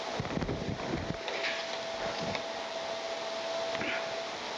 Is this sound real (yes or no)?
yes